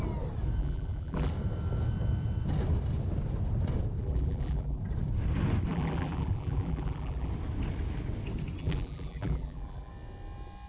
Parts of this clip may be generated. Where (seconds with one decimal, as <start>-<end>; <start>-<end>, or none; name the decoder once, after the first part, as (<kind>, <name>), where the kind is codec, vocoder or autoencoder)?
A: 0.6-1.3 (vocoder, BigVGAN v2); 4.0-4.8; 5.7-7.3; 8.6-9.9